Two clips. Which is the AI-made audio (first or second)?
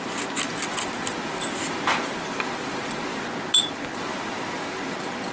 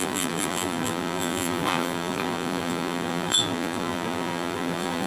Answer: second